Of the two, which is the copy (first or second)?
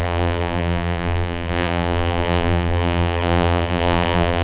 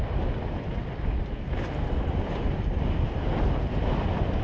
first